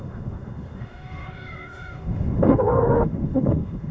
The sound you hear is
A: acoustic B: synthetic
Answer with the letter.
B